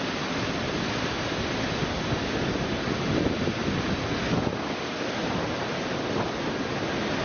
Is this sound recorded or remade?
recorded